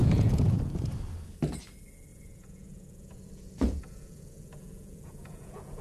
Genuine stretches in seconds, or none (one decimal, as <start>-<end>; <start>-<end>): 0.6-2.1